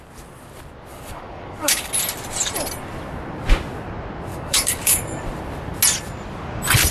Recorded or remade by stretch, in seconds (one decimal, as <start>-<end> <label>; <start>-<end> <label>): 0.0-0.9 recorded; 0.9-1.9 remade; 1.9-4.3 recorded; 4.3-5.2 remade; 5.2-6.9 recorded